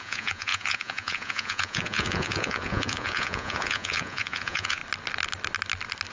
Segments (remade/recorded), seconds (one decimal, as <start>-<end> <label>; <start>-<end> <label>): 0.0-4.8 remade; 4.8-6.1 recorded